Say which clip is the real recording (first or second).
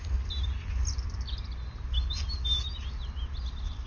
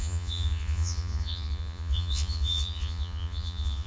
first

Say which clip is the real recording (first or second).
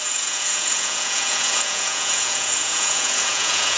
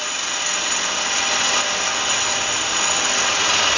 second